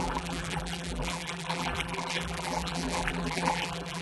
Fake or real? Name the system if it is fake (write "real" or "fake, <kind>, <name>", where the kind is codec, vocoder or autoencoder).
fake, vocoder, BigVGAN v2